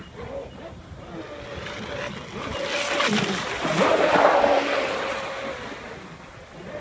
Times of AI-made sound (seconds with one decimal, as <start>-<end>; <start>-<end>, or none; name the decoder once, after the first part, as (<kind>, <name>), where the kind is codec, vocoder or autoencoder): 3.9-4.4 (vocoder, BigVGAN v2)